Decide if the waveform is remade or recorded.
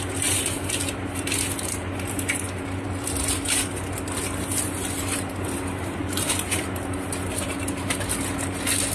recorded